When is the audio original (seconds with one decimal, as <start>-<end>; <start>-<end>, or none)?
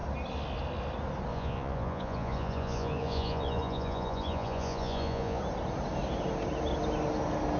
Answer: 0.0-1.3; 5.4-7.6